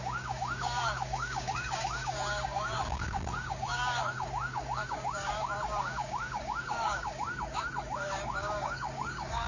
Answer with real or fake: fake